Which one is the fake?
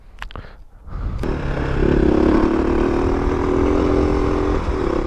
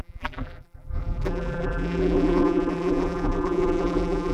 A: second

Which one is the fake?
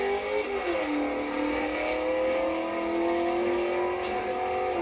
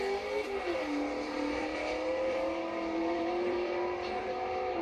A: second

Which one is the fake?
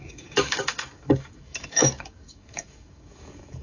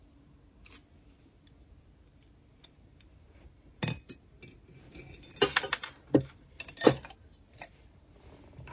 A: first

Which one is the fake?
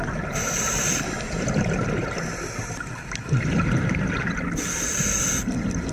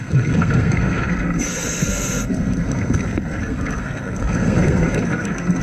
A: second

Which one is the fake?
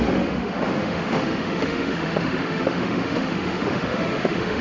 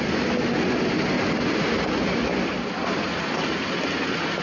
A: first